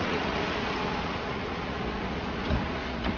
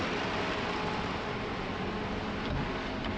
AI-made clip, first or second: first